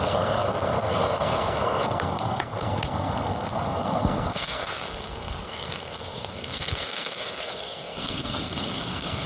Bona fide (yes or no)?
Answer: no